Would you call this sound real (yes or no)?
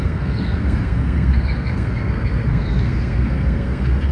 no